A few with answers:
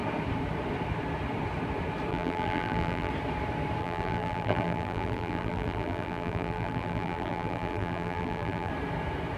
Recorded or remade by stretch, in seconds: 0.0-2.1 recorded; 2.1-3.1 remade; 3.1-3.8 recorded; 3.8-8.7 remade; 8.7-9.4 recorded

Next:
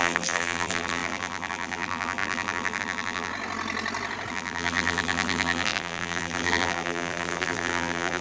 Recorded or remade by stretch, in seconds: 0.0-3.3 remade; 3.3-4.3 recorded; 4.3-8.2 remade